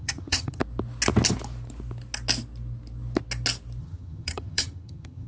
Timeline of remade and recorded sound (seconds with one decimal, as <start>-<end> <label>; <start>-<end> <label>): 0.0-0.6 remade; 0.6-3.8 recorded; 3.8-5.3 remade